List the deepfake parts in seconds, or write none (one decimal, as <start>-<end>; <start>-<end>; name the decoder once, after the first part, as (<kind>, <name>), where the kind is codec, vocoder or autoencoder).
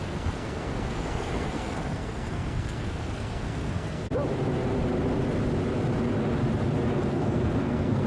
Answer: 0.0-4.0 (codec, SNAC); 7.1-8.1